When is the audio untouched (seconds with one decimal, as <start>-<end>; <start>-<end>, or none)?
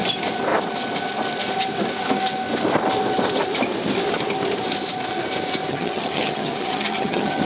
0.0-5.7